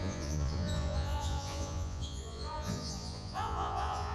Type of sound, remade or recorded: remade